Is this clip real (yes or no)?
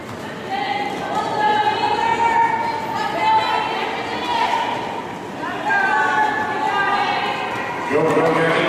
yes